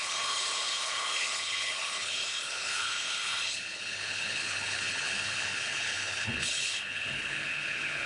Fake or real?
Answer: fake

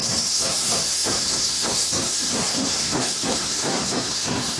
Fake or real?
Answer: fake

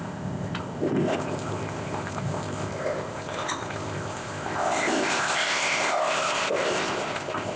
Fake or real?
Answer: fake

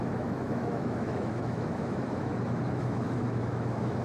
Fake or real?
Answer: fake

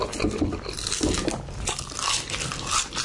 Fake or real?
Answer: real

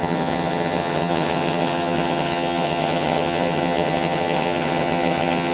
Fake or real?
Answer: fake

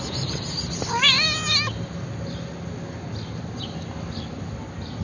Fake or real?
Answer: real